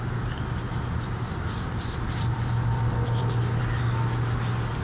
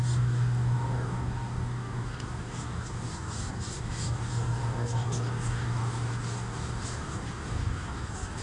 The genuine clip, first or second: first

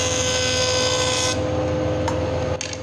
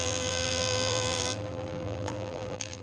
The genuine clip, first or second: first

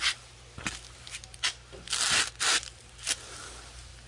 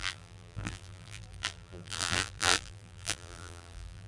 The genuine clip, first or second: first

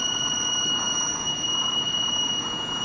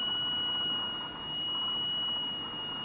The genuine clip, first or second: second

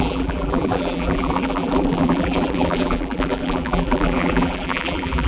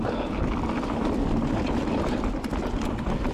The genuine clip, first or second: second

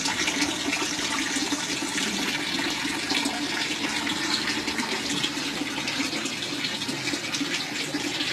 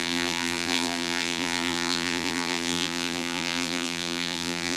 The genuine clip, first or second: first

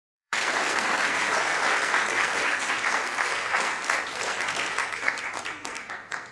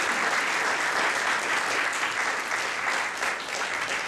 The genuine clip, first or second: second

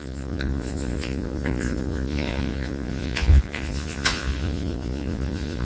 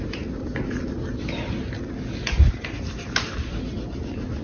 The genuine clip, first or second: second